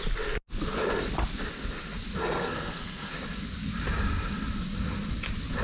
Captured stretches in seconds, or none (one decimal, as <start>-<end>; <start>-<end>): 0.0-2.2; 3.1-5.6